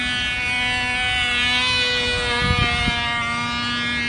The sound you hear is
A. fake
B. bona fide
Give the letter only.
B